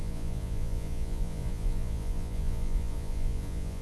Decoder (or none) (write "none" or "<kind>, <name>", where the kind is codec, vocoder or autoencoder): vocoder, Vocos